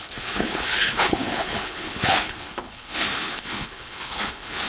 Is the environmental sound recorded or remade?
remade